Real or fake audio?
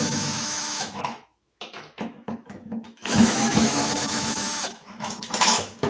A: fake